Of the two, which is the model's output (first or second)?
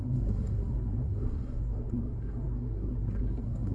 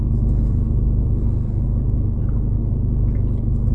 first